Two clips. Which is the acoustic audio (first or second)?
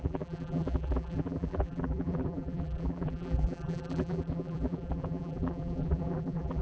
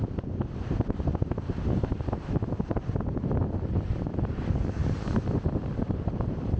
second